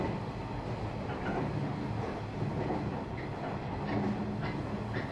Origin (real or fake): real